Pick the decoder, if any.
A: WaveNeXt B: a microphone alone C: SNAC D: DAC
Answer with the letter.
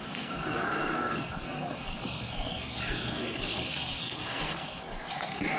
C